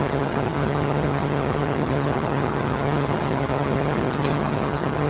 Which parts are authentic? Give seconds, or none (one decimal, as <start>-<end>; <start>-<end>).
none

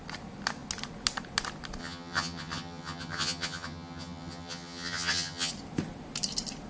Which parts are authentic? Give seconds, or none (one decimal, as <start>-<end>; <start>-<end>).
0.0-1.8; 5.5-6.7

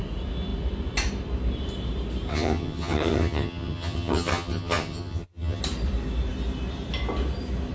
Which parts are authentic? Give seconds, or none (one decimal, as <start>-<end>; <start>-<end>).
0.0-2.3; 5.6-7.7

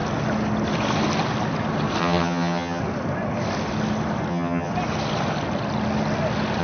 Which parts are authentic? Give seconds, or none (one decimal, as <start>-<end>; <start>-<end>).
0.0-2.0; 2.8-4.3; 4.7-6.6

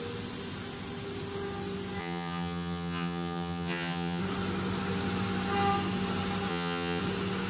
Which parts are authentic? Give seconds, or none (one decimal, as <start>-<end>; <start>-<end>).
0.0-2.0; 4.2-6.5; 7.0-7.5